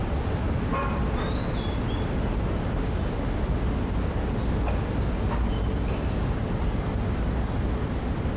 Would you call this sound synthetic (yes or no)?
no